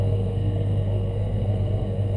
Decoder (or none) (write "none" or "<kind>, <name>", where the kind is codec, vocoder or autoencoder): codec, SNAC